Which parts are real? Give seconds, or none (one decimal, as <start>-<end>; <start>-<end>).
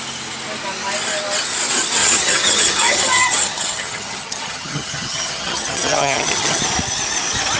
0.0-2.0; 6.6-7.6